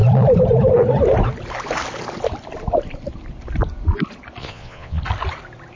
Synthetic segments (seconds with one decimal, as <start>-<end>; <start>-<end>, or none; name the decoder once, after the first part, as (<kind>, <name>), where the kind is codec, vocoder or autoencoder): 4.4-5.0 (vocoder, Vocos)